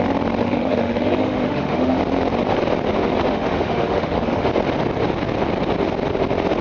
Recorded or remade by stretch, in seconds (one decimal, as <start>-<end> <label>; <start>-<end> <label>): 0.0-0.4 recorded; 0.4-2.0 remade; 2.0-3.3 recorded; 3.3-4.5 remade; 4.5-6.6 recorded